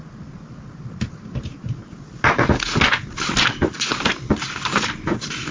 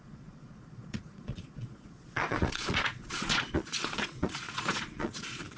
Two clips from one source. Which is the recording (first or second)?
first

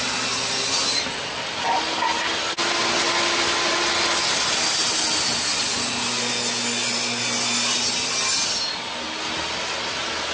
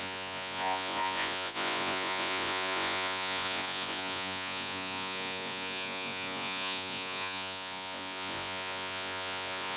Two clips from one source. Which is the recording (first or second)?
first